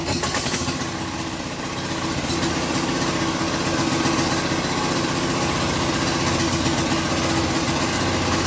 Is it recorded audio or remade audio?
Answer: recorded